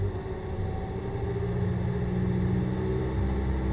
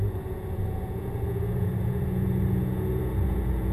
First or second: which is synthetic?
second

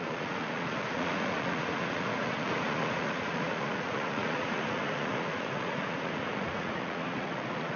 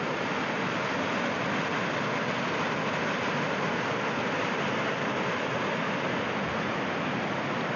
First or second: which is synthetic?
first